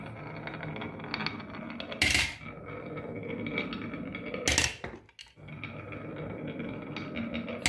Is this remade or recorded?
recorded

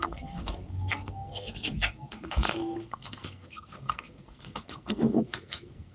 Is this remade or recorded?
remade